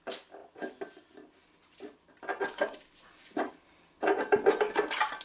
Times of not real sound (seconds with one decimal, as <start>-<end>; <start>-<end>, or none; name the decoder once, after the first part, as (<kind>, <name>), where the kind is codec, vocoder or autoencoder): none